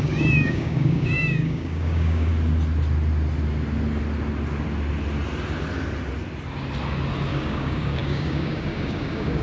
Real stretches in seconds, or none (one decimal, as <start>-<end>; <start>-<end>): 2.3-7.3